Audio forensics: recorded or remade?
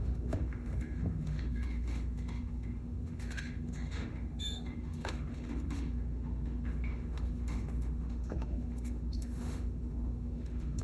remade